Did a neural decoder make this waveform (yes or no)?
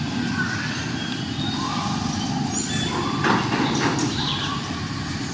no